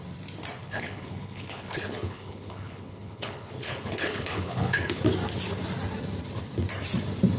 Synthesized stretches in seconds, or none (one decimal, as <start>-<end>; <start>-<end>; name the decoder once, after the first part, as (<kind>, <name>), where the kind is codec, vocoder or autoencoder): 0.6-5.0 (codec, HILCodec)